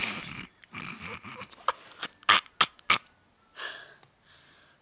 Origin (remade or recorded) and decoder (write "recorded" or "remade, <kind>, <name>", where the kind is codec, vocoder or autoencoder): recorded